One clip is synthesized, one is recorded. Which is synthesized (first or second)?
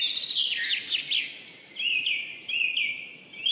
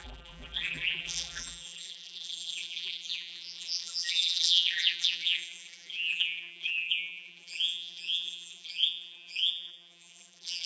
second